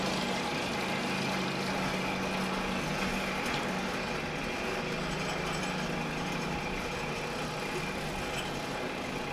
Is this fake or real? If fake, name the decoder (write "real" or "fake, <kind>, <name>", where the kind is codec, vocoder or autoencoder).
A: real